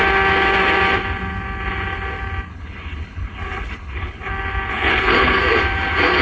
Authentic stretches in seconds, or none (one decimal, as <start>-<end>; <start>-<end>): 0.0-2.5; 4.3-4.7; 5.4-6.2